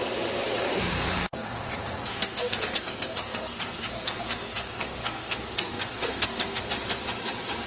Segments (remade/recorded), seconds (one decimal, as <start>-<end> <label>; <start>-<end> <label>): 0.0-0.9 recorded; 0.9-1.5 remade; 1.5-2.1 recorded; 2.1-6.7 remade; 6.7-7.7 recorded